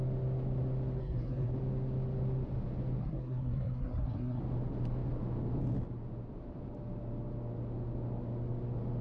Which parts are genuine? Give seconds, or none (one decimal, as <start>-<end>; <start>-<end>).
0.0-1.0; 1.5-3.0; 4.4-9.0

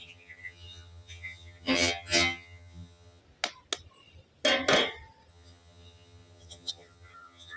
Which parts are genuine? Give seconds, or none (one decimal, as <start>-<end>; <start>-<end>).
3.2-5.3

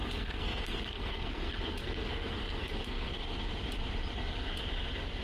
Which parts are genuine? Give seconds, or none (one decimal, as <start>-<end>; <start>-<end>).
3.1-5.2

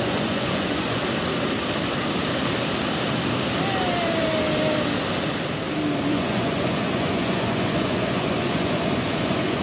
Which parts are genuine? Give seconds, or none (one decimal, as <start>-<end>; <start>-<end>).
1.0-6.1

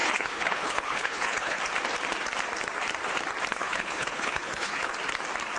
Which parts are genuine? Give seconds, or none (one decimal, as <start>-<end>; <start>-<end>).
1.6-3.5; 4.9-5.6